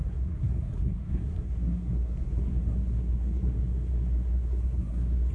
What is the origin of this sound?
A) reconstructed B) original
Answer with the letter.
A